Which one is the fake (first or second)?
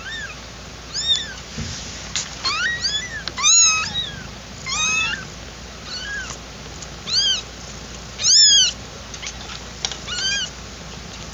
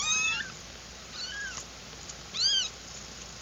second